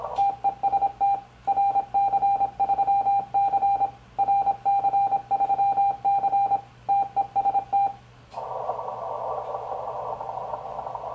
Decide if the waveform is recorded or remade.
recorded